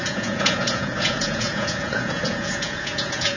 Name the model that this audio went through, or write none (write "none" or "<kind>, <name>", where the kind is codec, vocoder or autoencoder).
vocoder, Vocos